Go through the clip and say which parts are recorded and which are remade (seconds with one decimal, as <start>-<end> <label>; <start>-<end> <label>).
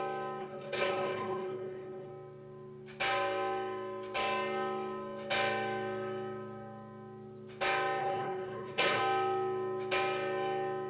0.0-0.4 recorded; 0.4-2.1 remade; 2.1-8.0 recorded; 8.0-9.0 remade; 9.0-10.9 recorded